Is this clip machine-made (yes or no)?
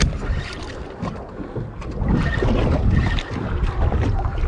no